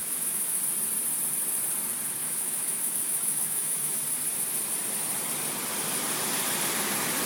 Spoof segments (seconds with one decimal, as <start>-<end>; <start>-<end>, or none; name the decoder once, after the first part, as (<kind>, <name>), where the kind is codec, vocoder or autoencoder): 0.0-0.6 (autoencoder, DAC-VAE); 2.2-4.0